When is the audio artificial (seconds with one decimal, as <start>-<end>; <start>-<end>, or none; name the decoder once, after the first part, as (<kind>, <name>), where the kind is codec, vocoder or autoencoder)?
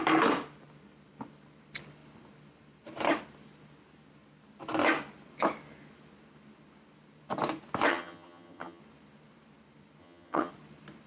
7.9-8.8 (vocoder, HiFi-GAN); 10.0-10.5